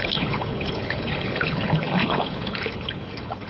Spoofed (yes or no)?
yes